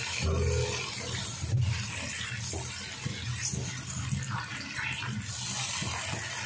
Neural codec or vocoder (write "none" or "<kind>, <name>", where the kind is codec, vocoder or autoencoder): none